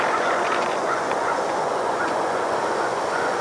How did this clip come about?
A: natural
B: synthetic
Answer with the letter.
B